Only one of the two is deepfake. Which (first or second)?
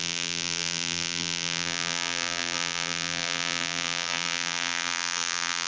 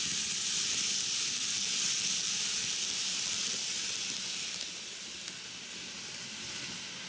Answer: first